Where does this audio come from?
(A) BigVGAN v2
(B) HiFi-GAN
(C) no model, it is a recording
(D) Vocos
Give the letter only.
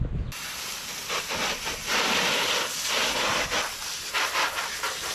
C